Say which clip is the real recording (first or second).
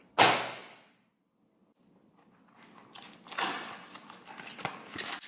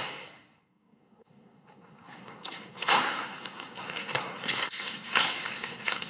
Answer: first